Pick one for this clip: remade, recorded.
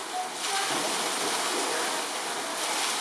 recorded